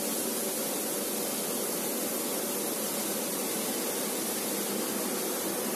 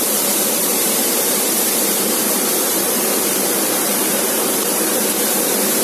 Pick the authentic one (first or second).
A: first